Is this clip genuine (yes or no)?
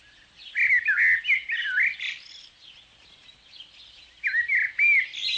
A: yes